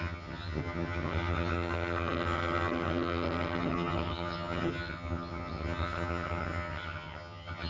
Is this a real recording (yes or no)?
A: no